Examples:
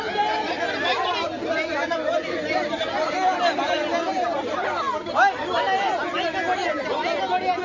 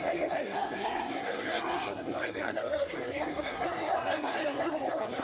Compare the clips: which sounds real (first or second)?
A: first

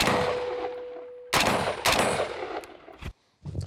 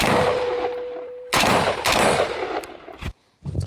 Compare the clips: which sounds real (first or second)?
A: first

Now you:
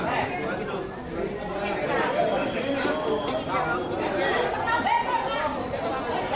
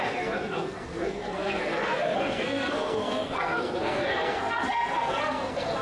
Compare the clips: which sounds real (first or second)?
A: first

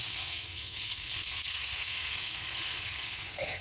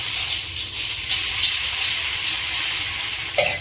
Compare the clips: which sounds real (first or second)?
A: second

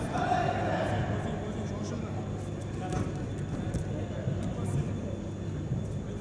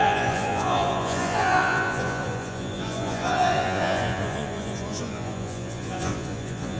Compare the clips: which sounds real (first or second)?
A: first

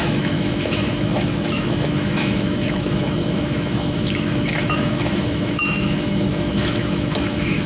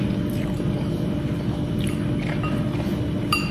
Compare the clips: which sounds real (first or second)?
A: second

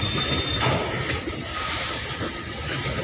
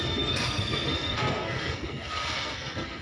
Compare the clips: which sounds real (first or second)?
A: first